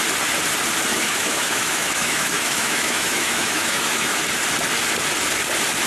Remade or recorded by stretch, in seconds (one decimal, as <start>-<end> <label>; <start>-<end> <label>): 0.0-0.9 recorded; 0.9-4.2 remade; 4.2-5.9 recorded